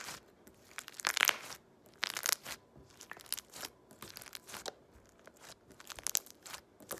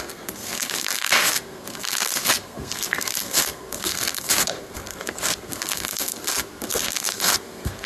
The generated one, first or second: second